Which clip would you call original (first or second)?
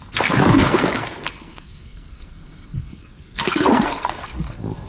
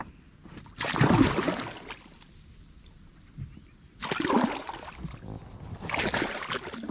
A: second